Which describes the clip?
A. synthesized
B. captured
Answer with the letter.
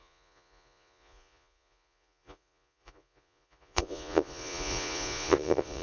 A